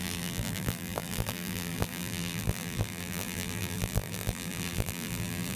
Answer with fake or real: fake